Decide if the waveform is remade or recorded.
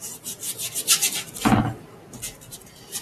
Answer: recorded